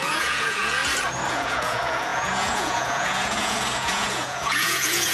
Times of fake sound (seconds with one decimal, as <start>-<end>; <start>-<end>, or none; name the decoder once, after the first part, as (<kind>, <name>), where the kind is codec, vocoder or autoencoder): 0.0-0.8 (vocoder, Vocos); 1.3-5.1